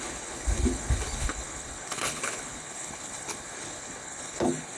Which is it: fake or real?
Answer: fake